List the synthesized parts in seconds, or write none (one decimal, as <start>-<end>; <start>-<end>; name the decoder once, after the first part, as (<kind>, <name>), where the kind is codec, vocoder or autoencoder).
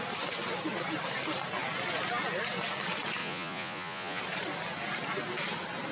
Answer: 3.2-4.2 (vocoder, Vocos)